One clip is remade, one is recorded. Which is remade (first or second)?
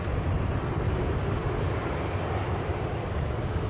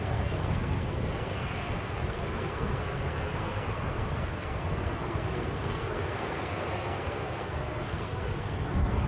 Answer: second